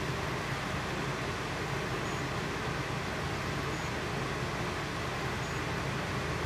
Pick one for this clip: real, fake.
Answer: real